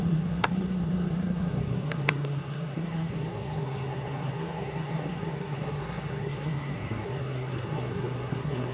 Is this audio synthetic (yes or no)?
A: yes